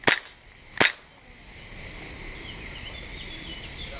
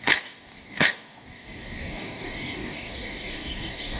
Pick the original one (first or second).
first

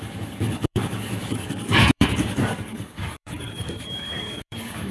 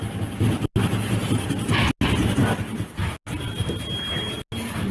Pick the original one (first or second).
second